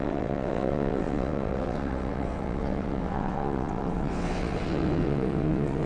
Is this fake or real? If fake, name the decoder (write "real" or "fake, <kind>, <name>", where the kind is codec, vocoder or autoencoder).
fake, vocoder, WaveNeXt